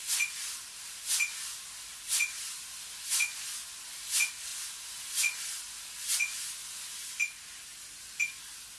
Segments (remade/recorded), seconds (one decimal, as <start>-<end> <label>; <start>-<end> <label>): 0.0-8.8 recorded